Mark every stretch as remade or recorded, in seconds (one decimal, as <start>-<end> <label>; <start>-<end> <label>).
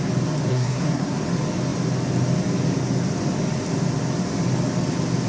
0.0-0.5 recorded; 0.5-1.2 remade; 1.2-5.3 recorded